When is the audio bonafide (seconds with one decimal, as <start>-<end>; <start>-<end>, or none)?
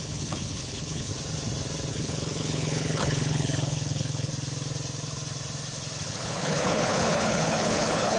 1.1-1.9; 4.3-6.0